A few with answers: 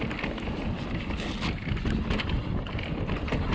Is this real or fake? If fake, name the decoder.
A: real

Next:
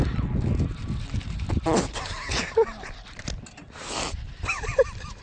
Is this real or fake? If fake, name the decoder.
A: real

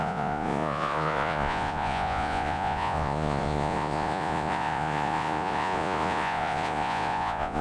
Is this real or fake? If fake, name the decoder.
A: fake, vocoder, Vocos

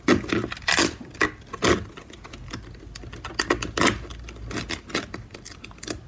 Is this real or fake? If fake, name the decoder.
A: real